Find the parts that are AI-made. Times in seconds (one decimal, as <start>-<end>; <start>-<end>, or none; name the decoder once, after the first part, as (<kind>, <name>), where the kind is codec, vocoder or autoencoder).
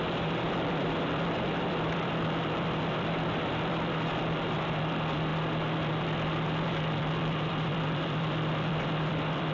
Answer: 0.0-5.3 (vocoder, BigVGAN v2); 5.9-9.5